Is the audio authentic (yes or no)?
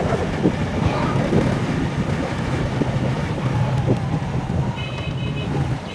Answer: yes